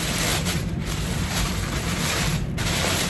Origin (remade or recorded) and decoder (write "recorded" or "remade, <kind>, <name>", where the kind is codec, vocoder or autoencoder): remade, vocoder, BigVGAN v2